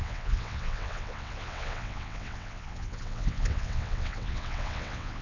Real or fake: fake